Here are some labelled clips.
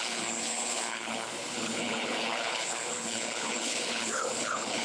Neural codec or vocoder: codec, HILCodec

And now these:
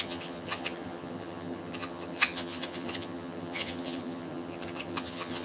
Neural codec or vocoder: vocoder, HiFi-GAN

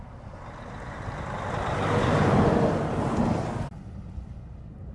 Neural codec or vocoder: none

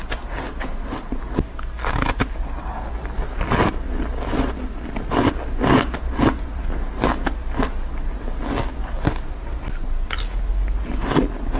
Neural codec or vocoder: none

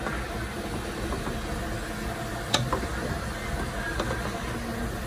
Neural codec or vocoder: none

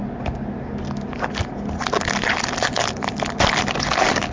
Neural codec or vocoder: none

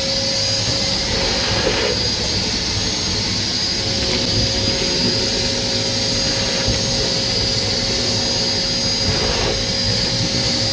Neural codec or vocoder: none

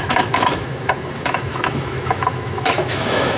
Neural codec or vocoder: autoencoder, DAC-VAE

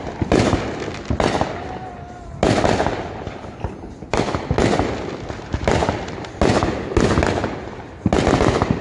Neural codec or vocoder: none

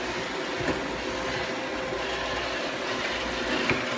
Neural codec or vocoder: none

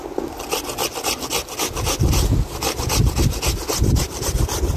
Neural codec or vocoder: none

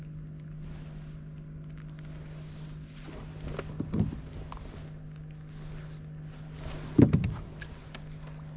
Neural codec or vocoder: none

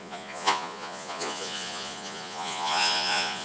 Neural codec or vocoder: vocoder, Vocos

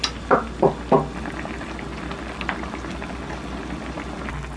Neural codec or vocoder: none